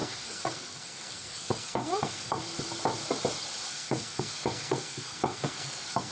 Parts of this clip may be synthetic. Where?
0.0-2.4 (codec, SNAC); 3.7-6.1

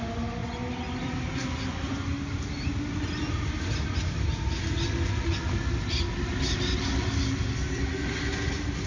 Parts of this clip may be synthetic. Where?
none

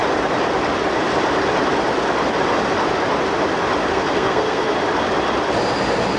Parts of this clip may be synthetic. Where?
3.9-4.7 (codec, SNAC)